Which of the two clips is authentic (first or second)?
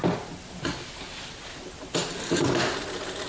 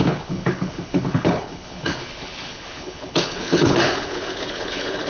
first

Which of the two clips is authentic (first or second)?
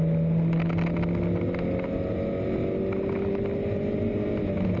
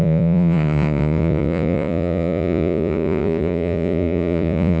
first